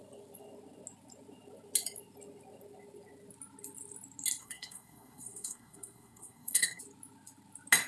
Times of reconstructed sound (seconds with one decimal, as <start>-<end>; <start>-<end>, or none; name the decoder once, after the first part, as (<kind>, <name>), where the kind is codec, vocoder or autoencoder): 4.4-6.8 (codec, SNAC)